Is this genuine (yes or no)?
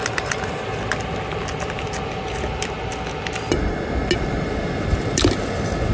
yes